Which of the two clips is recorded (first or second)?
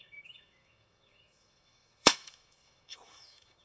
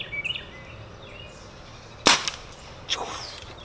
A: second